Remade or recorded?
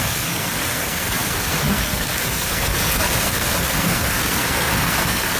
remade